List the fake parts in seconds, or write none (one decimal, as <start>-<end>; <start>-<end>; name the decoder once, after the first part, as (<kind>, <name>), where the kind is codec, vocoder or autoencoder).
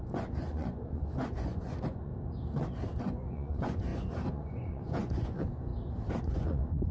0.0-2.1 (vocoder, Vocos); 3.0-5.7; 6.2-6.9